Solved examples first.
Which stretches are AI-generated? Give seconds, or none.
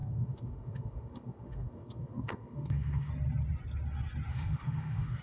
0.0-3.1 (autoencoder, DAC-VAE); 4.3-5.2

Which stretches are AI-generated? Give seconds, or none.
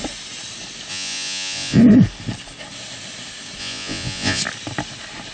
0.9-1.8 (vocoder, Vocos); 3.6-4.4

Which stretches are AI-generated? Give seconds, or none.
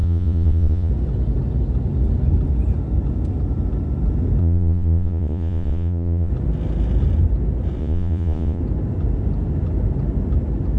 0.0-0.9 (vocoder, Vocos); 4.4-6.3; 7.8-8.6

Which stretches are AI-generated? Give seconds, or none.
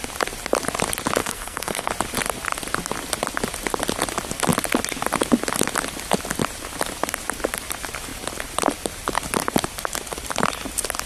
1.2-1.9 (codec, SNAC)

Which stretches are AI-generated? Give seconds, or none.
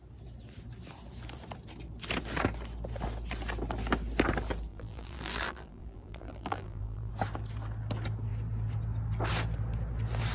4.7-7.1 (vocoder, BigVGAN v2)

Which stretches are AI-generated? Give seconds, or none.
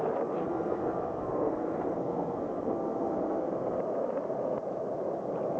0.4-3.8 (codec, SNAC)